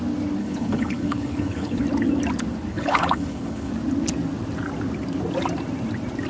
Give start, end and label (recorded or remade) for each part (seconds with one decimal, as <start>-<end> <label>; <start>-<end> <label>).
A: 0.0-0.4 recorded; 0.4-1.8 remade; 1.8-2.7 recorded; 2.7-3.7 remade; 3.7-6.3 recorded